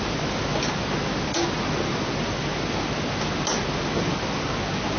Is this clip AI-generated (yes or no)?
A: no